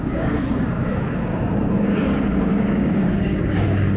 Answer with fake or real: fake